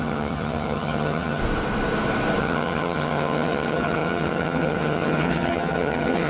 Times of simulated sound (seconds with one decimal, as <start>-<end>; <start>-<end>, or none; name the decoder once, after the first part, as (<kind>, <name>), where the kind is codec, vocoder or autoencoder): 0.0-1.4 (vocoder, HiFi-GAN); 2.4-6.3